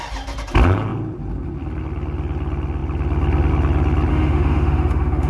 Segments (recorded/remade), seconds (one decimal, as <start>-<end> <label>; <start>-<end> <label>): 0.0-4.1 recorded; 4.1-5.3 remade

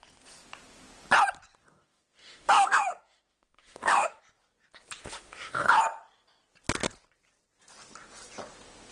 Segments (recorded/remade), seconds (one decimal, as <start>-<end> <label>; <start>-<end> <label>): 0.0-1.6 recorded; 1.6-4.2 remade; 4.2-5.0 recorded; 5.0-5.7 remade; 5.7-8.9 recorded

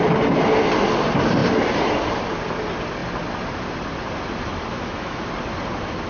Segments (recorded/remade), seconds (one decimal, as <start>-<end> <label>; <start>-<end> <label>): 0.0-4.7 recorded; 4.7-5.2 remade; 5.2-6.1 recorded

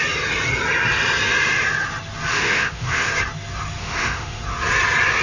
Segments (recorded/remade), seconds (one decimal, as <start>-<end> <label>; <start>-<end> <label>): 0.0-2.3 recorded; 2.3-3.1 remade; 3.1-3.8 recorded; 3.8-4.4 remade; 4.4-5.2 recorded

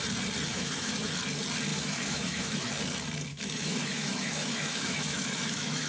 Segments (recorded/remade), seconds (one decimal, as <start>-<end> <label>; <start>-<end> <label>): 0.0-0.5 recorded; 0.5-1.1 remade; 1.1-1.7 recorded; 1.7-2.7 remade; 2.7-3.3 recorded; 3.3-5.9 remade

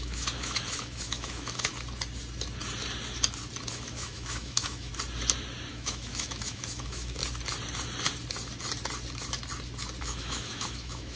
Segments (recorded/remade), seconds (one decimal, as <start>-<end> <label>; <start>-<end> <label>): 0.0-1.7 remade; 1.7-3.7 recorded; 3.7-4.9 remade; 4.9-5.7 recorded; 5.7-7.2 remade; 7.2-10.0 recorded; 10.0-11.2 remade

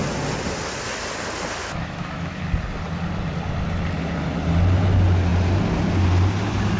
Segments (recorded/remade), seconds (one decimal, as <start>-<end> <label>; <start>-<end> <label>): 0.0-1.6 recorded; 1.6-2.4 remade; 2.4-6.8 recorded

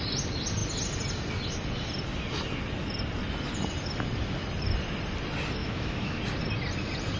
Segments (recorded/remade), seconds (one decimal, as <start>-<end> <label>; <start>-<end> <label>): 0.0-5.6 recorded; 5.6-6.2 remade; 6.2-7.2 recorded